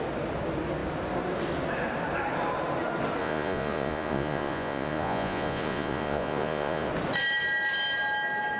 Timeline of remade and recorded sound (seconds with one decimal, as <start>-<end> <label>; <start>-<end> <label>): 0.0-3.2 recorded; 3.2-6.9 remade; 6.9-8.6 recorded